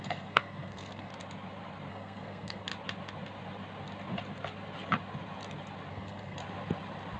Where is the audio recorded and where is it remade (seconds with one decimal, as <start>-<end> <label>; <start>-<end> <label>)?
0.0-1.1 remade; 1.1-1.9 recorded; 1.9-2.7 remade; 2.7-5.9 recorded; 5.9-6.4 remade; 6.4-7.2 recorded